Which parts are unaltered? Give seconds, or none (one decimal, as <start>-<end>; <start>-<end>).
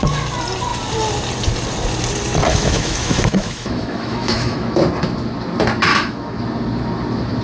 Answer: 0.0-2.5; 4.8-5.9; 6.4-7.4